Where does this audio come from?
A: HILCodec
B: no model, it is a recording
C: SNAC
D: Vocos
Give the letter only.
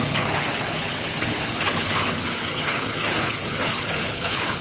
A